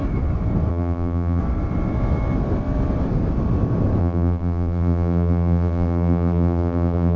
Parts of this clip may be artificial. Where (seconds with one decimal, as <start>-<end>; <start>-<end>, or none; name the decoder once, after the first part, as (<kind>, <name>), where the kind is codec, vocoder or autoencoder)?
0.7-1.4 (vocoder, BigVGAN v2); 4.0-7.2